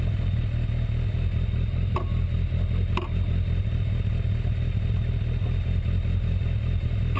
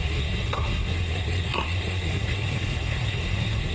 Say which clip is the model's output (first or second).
second